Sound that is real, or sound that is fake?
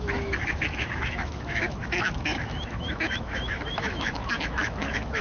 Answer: fake